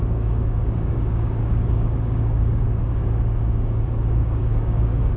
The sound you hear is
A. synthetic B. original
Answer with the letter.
A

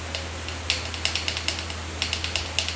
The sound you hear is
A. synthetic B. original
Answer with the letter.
B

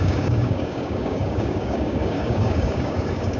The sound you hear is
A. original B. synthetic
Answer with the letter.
B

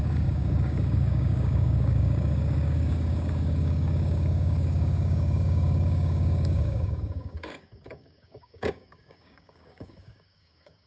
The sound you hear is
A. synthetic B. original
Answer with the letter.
A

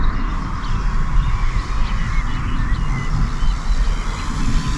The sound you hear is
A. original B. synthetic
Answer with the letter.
A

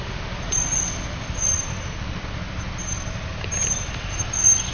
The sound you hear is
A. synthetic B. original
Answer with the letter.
B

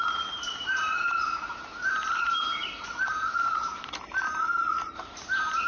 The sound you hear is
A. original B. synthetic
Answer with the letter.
A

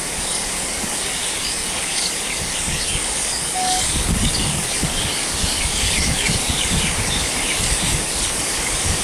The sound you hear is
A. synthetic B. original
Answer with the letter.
A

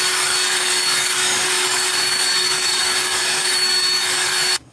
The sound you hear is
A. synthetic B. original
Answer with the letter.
A